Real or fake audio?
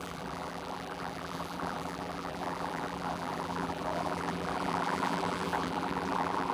fake